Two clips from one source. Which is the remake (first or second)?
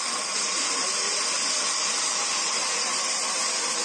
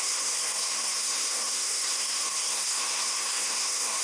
second